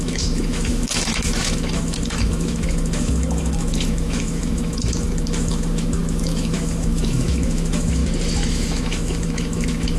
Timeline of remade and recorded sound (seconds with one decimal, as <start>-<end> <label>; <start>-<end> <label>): 0.0-8.0 remade; 8.0-8.5 recorded; 8.5-10.0 remade